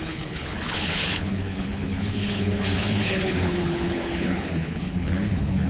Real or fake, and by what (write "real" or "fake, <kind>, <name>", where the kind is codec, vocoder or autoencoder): fake, codec, HILCodec